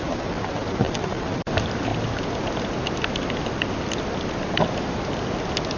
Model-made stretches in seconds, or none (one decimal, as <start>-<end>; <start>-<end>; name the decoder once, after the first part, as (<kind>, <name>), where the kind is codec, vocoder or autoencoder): 0.0-1.9 (vocoder, BigVGAN v2)